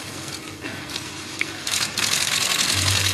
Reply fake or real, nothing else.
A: fake